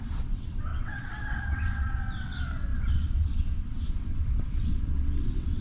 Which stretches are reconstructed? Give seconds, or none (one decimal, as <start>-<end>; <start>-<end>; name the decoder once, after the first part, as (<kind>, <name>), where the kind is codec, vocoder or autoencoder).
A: 0.0-5.6 (vocoder, WaveNeXt)